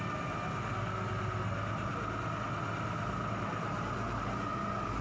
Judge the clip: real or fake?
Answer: real